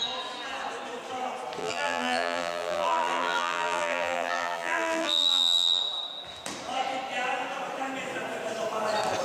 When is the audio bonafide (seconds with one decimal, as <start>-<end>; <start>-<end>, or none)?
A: 0.0-1.6; 5.8-9.2